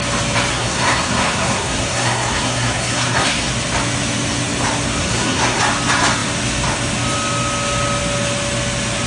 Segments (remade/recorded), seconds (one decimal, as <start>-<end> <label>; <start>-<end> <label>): 0.0-0.5 recorded; 0.5-3.5 remade; 3.5-5.0 recorded; 5.0-5.6 remade; 5.6-9.1 recorded